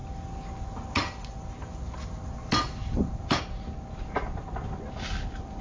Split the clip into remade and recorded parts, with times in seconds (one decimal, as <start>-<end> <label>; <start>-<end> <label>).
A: 0.0-2.8 recorded; 2.8-3.4 remade; 3.4-5.6 recorded